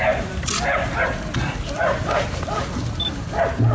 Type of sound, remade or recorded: recorded